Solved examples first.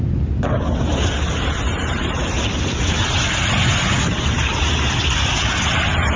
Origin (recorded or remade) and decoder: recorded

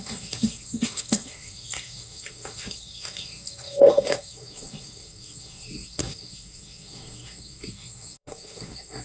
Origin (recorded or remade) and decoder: remade, codec, SNAC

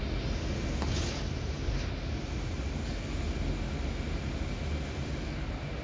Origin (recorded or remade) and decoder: recorded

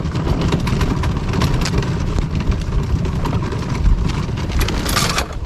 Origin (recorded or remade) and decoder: recorded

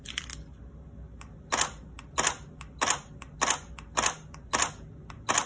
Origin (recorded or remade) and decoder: recorded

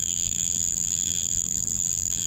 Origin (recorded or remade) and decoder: remade, vocoder, BigVGAN v2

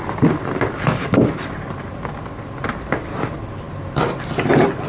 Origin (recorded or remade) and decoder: recorded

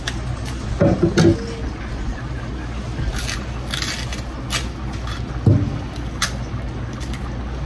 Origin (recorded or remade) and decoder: recorded